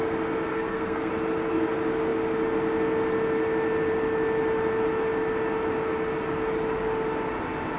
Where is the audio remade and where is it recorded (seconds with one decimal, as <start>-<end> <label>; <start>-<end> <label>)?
0.0-0.5 recorded; 0.5-1.1 remade; 1.1-7.8 recorded